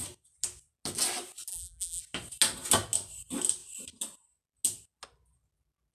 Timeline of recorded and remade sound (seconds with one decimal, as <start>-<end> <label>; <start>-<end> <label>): 0.0-1.5 recorded; 1.5-2.0 remade; 2.0-5.9 recorded